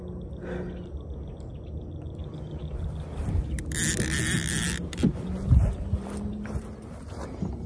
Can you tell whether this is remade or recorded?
recorded